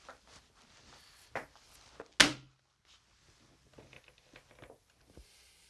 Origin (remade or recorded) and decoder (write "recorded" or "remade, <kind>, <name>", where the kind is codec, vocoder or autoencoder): recorded